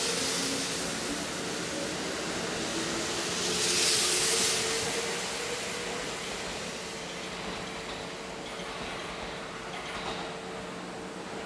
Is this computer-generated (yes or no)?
no